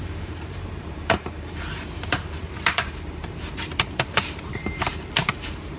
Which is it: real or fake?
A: fake